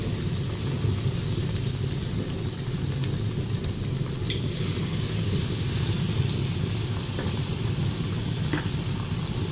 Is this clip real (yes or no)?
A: yes